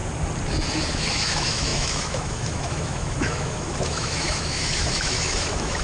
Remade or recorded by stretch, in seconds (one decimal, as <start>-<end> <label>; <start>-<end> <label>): 0.0-0.9 recorded; 0.9-5.8 remade